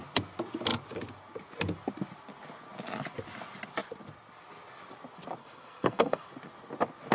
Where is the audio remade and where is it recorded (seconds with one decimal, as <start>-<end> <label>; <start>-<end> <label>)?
0.0-5.4 recorded; 5.4-6.3 remade; 6.3-7.1 recorded